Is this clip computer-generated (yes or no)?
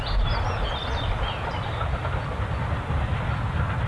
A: no